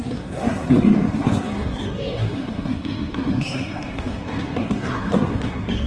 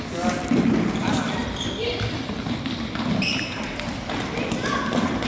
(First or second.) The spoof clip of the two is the first